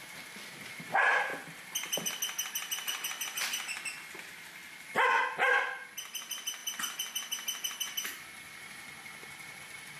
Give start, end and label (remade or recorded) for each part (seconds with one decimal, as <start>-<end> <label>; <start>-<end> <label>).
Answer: 0.0-10.0 recorded